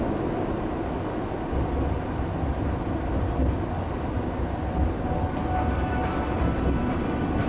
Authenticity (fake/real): real